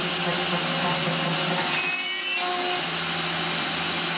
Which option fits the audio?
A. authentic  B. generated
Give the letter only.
A